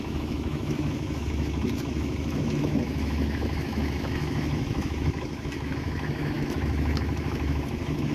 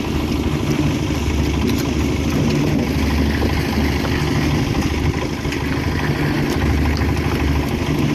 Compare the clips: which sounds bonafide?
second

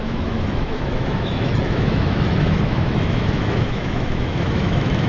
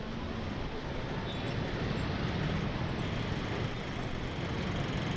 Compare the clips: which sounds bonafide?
second